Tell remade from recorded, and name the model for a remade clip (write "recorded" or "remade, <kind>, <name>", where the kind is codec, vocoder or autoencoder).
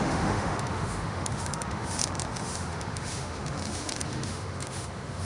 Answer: remade, autoencoder, DAC-VAE